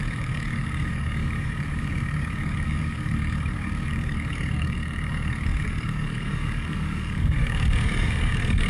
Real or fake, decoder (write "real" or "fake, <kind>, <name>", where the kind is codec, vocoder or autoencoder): fake, codec, DAC